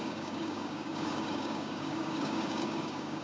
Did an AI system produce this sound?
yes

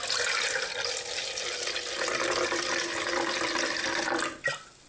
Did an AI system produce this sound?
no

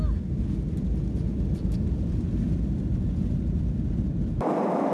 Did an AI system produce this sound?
no